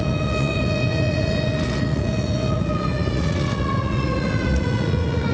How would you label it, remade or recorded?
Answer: remade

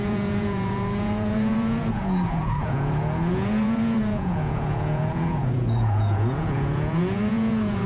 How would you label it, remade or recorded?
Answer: remade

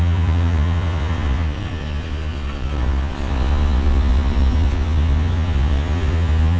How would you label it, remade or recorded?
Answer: remade